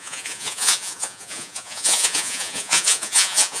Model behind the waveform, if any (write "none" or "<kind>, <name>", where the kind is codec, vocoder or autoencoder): vocoder, Vocos